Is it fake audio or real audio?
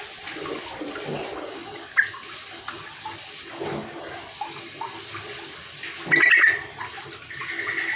real